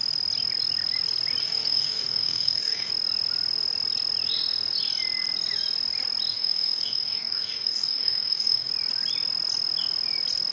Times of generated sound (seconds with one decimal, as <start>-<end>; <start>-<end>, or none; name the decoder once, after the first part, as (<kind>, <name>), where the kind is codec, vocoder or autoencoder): 1.4-2.9 (codec, DAC); 6.3-8.7